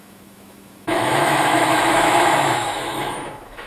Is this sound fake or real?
fake